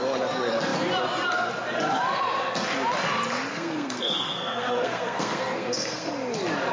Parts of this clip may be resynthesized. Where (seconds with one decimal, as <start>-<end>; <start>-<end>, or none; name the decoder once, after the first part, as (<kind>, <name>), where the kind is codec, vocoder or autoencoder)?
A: 3.5-6.1 (codec, SNAC)